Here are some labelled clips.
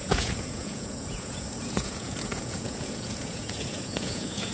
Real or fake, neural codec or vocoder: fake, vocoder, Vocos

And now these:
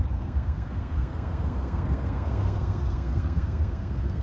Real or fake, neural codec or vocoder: fake, codec, SNAC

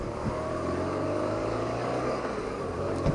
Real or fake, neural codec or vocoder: fake, codec, DAC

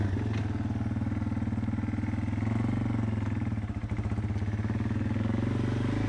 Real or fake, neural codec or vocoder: real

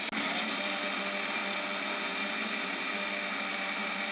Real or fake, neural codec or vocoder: real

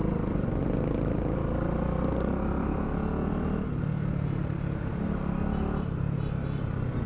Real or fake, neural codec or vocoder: real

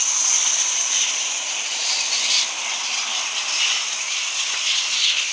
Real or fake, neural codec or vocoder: real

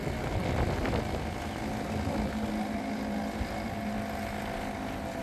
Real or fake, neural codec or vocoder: real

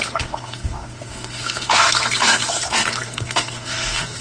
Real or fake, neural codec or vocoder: fake, codec, SNAC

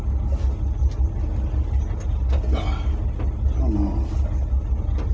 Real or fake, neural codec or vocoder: real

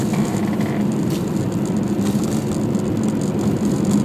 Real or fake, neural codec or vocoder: real